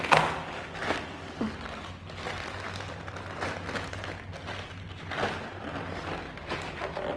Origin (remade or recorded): recorded